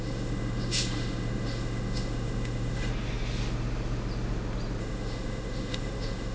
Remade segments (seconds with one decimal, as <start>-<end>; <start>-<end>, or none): 0.0-2.9; 4.8-6.3